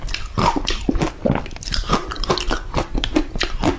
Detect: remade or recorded remade